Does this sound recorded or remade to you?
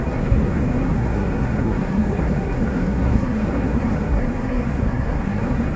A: remade